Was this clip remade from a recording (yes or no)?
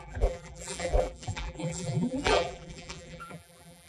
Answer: yes